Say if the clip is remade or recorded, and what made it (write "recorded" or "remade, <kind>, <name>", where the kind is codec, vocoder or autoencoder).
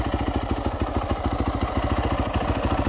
recorded